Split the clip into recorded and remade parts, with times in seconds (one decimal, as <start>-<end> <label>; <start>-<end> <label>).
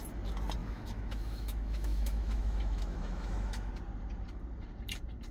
0.0-0.6 recorded; 0.6-3.7 remade; 3.7-5.3 recorded